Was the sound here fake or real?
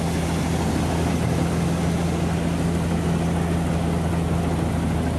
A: real